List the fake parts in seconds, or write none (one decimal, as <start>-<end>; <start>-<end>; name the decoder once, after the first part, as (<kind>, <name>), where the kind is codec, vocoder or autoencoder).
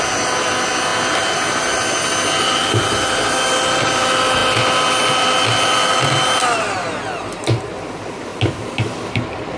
none